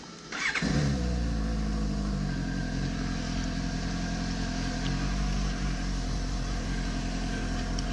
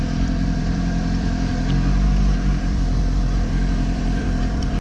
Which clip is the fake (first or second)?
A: second